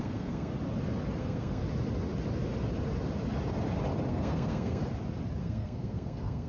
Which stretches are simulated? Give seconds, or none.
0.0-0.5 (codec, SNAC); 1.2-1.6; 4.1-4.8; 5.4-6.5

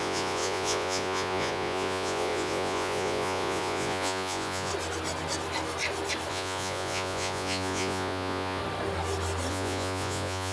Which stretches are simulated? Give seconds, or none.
0.0-4.7 (vocoder, Vocos); 6.3-8.6; 9.5-10.5

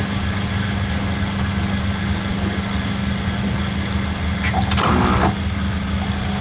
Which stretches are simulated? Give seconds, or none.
none

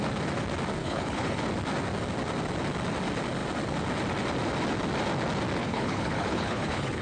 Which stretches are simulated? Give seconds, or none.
0.8-1.4 (codec, HILCodec); 5.6-7.0